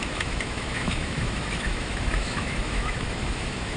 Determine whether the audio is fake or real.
fake